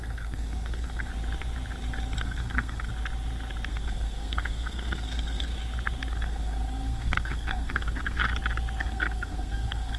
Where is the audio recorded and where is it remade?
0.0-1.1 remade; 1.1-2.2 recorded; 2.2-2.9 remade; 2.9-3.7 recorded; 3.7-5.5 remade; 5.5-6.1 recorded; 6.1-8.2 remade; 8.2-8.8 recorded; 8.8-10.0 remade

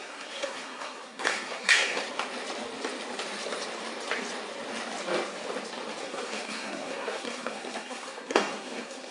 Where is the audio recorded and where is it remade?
0.0-2.0 remade; 2.0-6.0 recorded; 6.0-9.1 remade

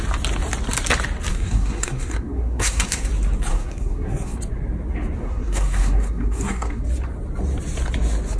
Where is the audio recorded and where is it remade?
0.0-1.3 recorded; 1.3-3.1 remade; 3.1-3.5 recorded; 3.5-4.4 remade; 4.4-5.2 recorded; 5.2-6.8 remade; 6.8-8.4 recorded

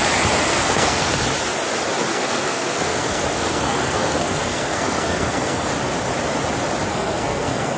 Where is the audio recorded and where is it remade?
0.0-0.5 recorded; 0.5-1.1 remade; 1.1-2.1 recorded; 2.1-5.7 remade; 5.7-6.9 recorded; 6.9-7.8 remade

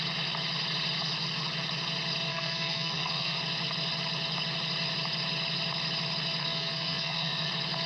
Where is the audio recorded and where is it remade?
0.0-2.3 recorded; 2.3-3.4 remade; 3.4-6.4 recorded; 6.4-7.5 remade; 7.5-7.9 recorded

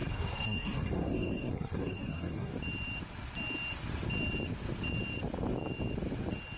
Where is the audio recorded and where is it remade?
0.0-2.5 remade; 2.5-6.6 recorded